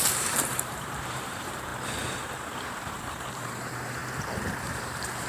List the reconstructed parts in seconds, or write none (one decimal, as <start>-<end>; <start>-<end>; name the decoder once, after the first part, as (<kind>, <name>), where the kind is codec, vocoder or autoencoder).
0.0-1.7 (vocoder, BigVGAN v2); 3.3-4.0; 4.6-5.3